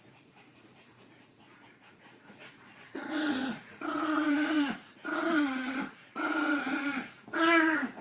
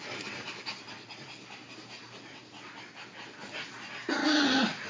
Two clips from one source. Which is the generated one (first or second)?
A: first